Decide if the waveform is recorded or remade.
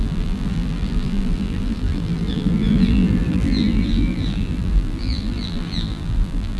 remade